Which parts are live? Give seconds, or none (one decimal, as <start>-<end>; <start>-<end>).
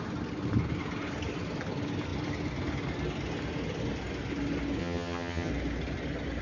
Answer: 0.0-4.8; 5.5-6.4